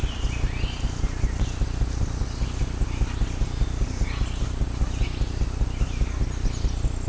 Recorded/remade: recorded